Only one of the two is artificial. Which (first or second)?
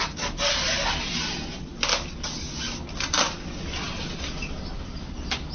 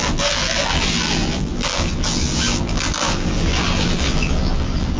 second